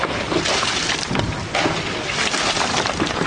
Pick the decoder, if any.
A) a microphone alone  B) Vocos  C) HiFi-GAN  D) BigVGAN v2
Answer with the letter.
A